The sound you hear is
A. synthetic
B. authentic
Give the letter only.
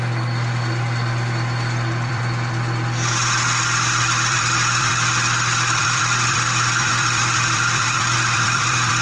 A